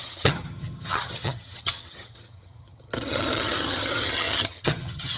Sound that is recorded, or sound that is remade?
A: remade